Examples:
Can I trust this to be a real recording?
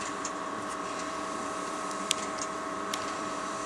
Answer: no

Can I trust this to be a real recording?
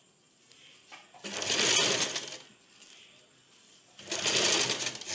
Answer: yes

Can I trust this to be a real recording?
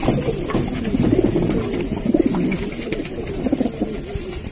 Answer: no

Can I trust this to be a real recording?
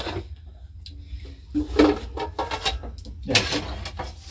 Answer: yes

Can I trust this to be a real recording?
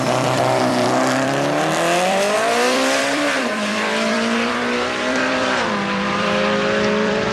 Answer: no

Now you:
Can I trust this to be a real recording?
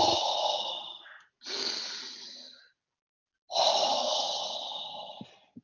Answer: yes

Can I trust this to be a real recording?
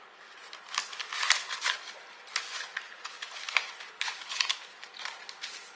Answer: yes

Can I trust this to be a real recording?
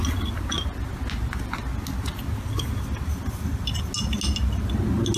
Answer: yes